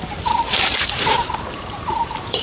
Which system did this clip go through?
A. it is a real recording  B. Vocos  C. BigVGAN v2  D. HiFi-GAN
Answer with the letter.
C